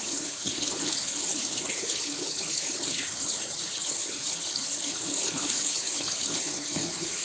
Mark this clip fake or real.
fake